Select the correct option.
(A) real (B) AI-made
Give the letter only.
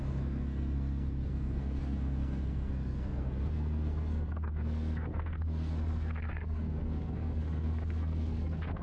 B